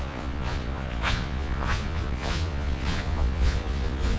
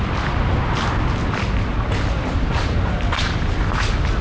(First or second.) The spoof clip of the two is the first